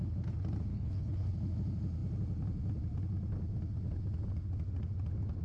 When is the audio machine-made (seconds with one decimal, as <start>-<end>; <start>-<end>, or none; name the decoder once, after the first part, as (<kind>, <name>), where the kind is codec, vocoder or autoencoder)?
0.7-1.3 (codec, HILCodec)